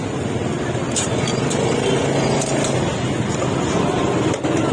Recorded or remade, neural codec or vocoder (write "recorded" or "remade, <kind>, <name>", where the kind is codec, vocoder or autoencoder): recorded